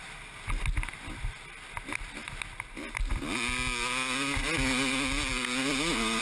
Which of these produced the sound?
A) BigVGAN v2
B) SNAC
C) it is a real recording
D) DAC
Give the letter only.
C